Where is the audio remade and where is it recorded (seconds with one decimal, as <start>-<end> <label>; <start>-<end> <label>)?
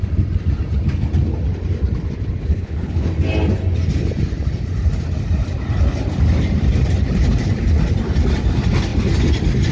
0.0-2.5 recorded; 2.5-3.1 remade; 3.1-9.7 recorded